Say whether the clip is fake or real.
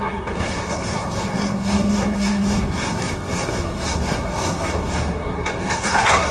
fake